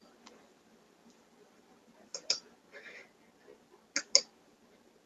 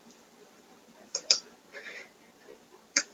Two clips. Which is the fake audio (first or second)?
second